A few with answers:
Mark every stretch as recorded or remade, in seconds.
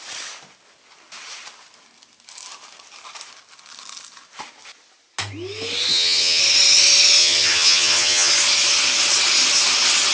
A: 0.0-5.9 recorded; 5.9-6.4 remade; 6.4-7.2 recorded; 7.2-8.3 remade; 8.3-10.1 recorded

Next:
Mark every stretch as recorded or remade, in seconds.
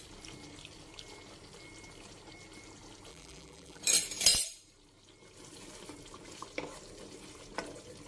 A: 0.0-3.1 recorded; 3.1-3.8 remade; 3.8-8.1 recorded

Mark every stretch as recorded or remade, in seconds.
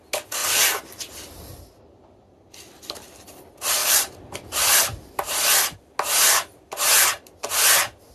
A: 0.0-3.8 recorded; 3.8-4.3 remade; 4.3-8.1 recorded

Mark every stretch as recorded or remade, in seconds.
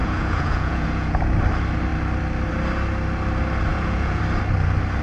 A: 0.0-1.2 remade; 1.2-3.7 recorded; 3.7-4.2 remade; 4.2-5.0 recorded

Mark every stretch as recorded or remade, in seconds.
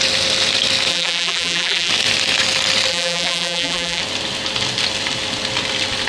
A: 0.0-0.9 recorded; 0.9-1.9 remade; 1.9-2.9 recorded; 2.9-4.0 remade; 4.0-6.1 recorded